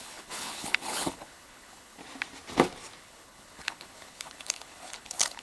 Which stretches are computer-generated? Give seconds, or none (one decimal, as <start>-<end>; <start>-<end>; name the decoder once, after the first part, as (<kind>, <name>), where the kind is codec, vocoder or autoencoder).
0.0-2.0 (codec, HILCodec); 3.0-5.4